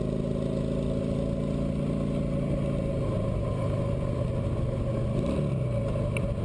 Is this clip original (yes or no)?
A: yes